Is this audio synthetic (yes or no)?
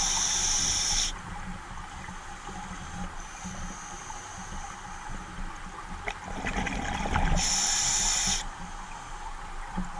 no